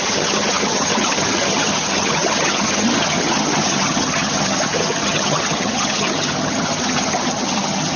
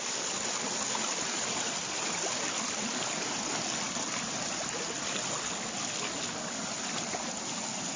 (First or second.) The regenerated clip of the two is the first